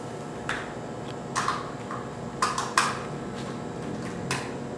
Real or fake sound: real